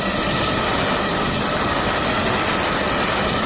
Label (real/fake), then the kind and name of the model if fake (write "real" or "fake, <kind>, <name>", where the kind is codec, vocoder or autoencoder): real